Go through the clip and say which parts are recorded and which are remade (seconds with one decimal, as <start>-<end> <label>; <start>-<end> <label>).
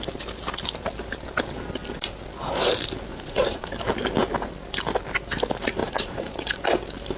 0.0-3.1 recorded; 3.1-3.7 remade; 3.7-5.8 recorded; 5.8-6.6 remade; 6.6-7.2 recorded